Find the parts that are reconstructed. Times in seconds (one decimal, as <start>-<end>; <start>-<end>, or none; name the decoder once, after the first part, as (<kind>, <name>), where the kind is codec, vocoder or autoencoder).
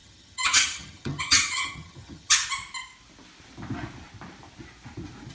0.0-2.4 (vocoder, HiFi-GAN)